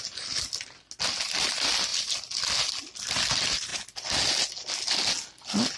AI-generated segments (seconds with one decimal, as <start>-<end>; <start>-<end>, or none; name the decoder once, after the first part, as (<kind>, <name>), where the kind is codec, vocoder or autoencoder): none